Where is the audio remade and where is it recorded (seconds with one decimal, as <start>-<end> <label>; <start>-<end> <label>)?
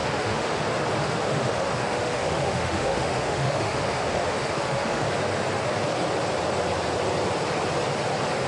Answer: 0.0-0.6 remade; 0.6-1.0 recorded; 1.0-5.1 remade; 5.1-8.5 recorded